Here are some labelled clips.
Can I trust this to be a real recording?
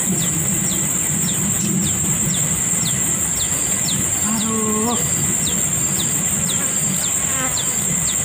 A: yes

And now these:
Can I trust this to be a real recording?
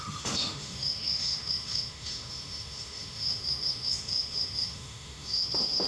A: no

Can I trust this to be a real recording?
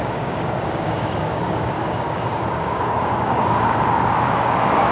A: no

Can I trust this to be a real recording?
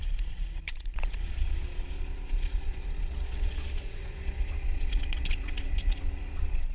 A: no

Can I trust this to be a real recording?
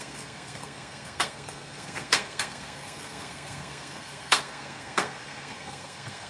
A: no